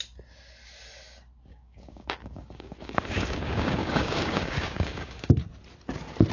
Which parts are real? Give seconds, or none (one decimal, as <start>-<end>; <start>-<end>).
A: 0.0-1.5; 5.3-6.3